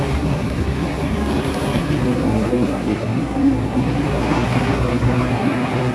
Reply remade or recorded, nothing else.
remade